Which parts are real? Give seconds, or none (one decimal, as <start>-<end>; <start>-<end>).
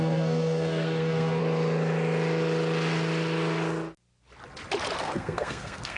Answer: 1.4-5.0